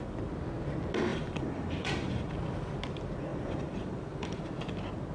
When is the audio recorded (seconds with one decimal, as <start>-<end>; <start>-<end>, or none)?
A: 0.0-1.1; 2.3-3.3; 4.4-5.1